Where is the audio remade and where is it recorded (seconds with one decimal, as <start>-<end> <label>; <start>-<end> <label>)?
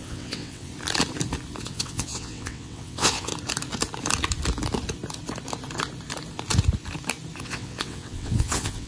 0.0-0.7 remade; 0.7-1.6 recorded; 1.6-3.3 remade; 3.3-7.4 recorded; 7.4-8.9 remade